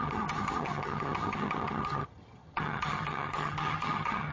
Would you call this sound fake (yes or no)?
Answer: yes